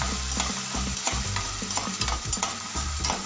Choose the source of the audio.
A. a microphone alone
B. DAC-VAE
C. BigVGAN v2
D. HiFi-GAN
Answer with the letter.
A